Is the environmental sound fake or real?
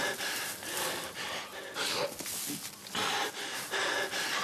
real